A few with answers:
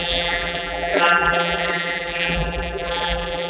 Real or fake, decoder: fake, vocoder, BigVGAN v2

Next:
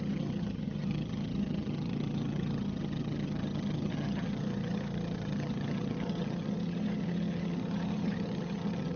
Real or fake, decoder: fake, vocoder, HiFi-GAN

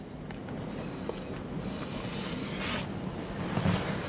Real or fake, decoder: real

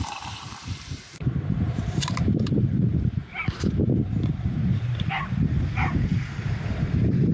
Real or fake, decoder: fake, vocoder, BigVGAN v2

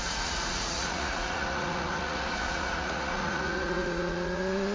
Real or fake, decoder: fake, vocoder, Vocos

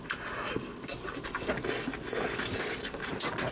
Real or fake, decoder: real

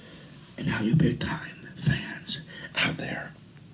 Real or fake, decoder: real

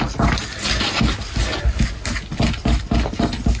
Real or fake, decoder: real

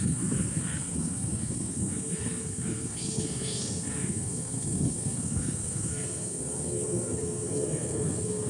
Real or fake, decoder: fake, codec, SNAC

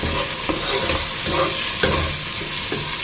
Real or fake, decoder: real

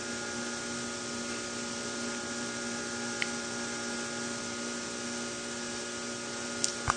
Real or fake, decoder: real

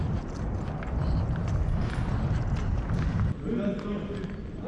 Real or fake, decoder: real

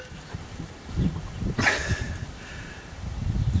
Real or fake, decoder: real